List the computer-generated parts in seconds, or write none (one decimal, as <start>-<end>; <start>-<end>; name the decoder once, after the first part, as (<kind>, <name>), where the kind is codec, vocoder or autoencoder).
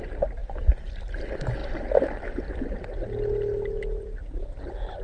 none